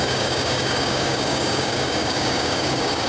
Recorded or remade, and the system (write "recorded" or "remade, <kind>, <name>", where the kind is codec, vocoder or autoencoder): remade, codec, DAC